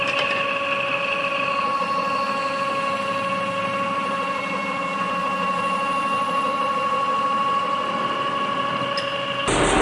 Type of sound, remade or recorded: recorded